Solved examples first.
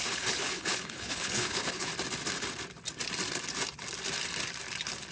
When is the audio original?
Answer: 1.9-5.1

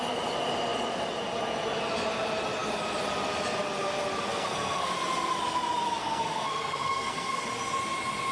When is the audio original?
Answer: 0.0-4.3; 4.9-6.0; 7.5-8.3

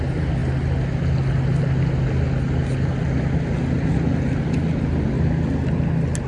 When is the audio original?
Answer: 0.0-6.3

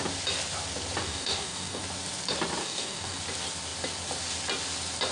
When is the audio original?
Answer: 0.0-1.0; 1.8-2.6; 3.2-5.1

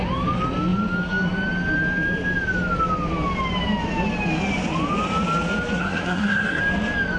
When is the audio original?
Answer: 0.0-5.8; 6.6-7.2

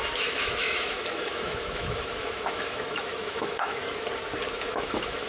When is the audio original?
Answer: 3.8-4.5

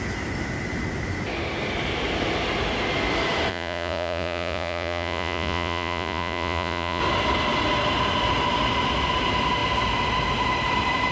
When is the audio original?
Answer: 0.0-3.5; 7.0-11.1

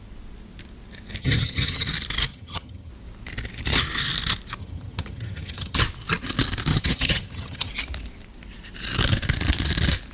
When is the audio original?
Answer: 0.0-1.2; 1.9-2.3; 2.9-4.6; 5.8-6.7; 7.7-10.1